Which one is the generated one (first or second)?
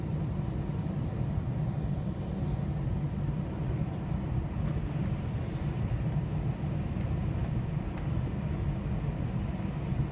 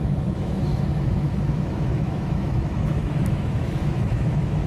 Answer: second